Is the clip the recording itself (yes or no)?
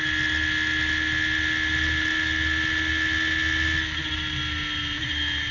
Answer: yes